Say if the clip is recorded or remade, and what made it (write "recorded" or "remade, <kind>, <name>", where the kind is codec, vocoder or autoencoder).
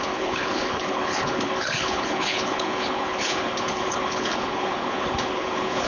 remade, codec, HILCodec